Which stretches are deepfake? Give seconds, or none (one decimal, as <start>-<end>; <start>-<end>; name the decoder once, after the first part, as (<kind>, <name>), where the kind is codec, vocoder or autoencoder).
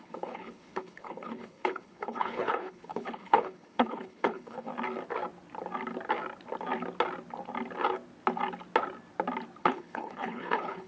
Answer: 0.0-4.7 (codec, HILCodec); 9.6-10.9